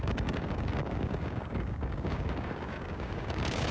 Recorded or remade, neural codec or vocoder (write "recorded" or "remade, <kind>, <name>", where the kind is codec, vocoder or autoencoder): remade, codec, DAC